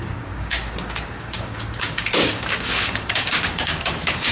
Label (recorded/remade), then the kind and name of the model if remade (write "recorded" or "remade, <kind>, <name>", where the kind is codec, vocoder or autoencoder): remade, codec, DAC